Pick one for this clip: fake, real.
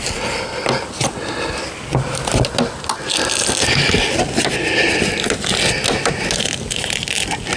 real